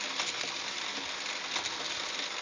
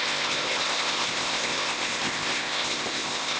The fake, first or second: second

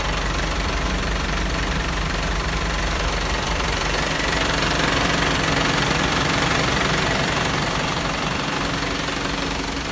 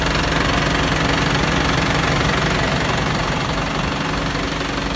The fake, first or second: first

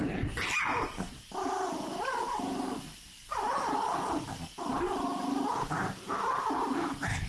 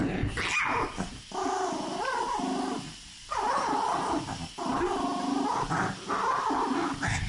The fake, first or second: first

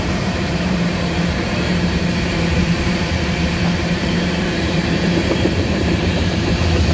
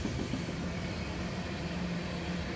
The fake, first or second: first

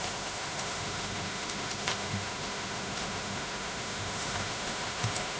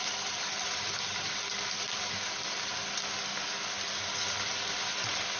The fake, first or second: first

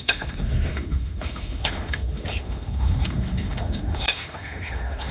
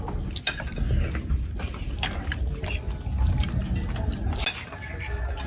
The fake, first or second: first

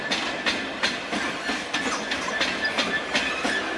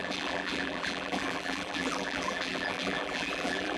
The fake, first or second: second